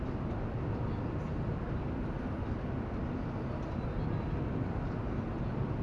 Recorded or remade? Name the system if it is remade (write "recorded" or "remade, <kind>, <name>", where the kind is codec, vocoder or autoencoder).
recorded